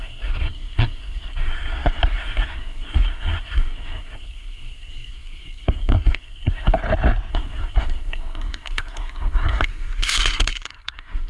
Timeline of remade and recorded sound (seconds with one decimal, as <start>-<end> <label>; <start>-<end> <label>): 0.0-6.8 remade; 6.8-7.3 recorded; 7.3-11.3 remade